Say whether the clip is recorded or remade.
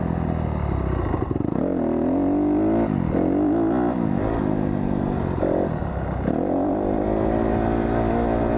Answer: recorded